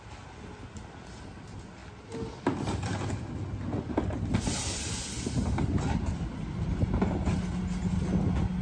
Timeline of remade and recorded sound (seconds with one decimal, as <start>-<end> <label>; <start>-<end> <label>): 0.0-8.6 recorded

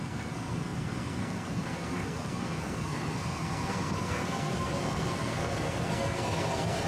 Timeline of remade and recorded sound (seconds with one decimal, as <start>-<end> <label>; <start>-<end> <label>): 0.0-6.9 remade

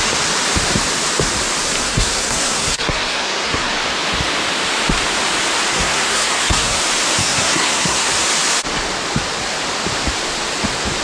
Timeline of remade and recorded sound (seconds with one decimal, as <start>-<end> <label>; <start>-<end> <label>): 0.0-1.8 recorded; 1.8-3.7 remade; 3.7-5.7 recorded; 5.7-6.8 remade; 6.8-7.2 recorded; 7.2-8.1 remade; 8.1-11.0 recorded

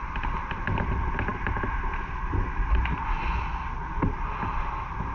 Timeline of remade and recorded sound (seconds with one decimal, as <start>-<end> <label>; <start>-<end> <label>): 0.0-5.1 recorded

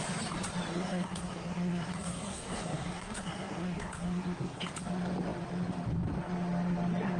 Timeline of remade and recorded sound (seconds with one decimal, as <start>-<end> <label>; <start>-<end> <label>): 0.0-0.7 recorded; 0.7-4.6 remade; 4.6-7.2 recorded

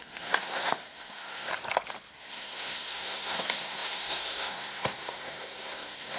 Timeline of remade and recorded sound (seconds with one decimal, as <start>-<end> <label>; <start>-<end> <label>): 0.0-1.5 remade; 1.5-2.1 recorded; 2.1-6.2 remade

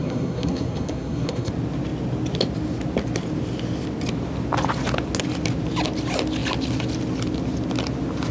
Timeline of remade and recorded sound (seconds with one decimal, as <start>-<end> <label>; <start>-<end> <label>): 0.0-1.5 remade; 1.5-8.3 recorded